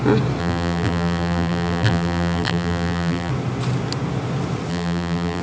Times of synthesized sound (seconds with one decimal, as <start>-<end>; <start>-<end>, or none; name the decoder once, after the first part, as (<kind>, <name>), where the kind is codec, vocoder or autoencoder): 0.4-3.3 (vocoder, BigVGAN v2); 4.7-5.4